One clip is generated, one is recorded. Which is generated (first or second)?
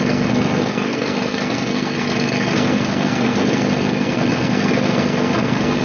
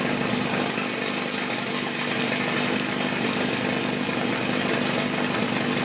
first